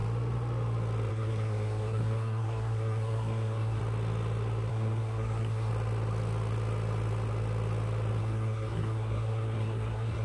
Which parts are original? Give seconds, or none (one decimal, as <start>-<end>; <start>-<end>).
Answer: 0.0-1.1; 3.8-4.7; 5.7-8.2